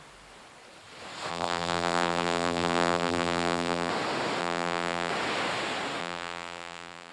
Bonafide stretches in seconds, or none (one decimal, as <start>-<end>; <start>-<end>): 0.0-1.3; 3.9-4.4; 5.1-6.0